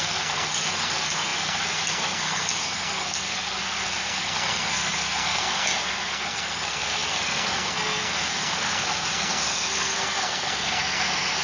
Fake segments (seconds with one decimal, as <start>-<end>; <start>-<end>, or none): 0.0-11.4